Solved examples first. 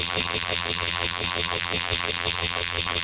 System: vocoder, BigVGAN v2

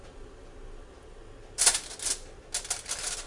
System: none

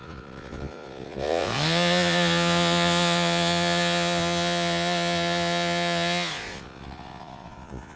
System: vocoder, Vocos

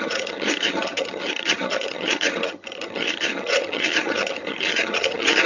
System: vocoder, HiFi-GAN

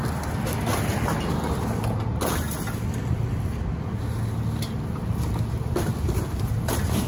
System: none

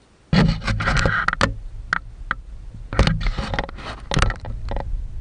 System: none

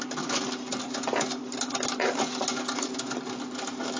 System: none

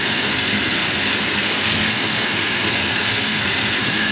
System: codec, SNAC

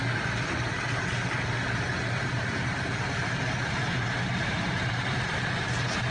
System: none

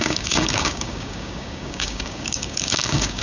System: codec, DAC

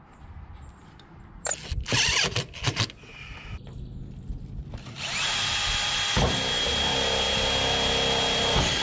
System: none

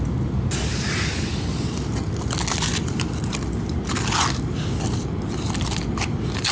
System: none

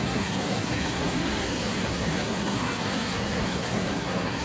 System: codec, SNAC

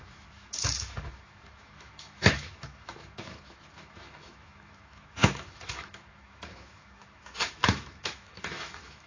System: autoencoder, DAC-VAE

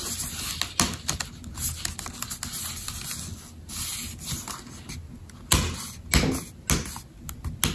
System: none